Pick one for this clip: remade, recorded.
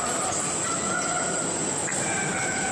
recorded